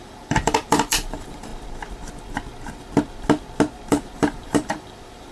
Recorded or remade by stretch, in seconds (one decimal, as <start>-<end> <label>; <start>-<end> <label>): 0.0-1.5 remade; 1.5-3.9 recorded; 3.9-5.3 remade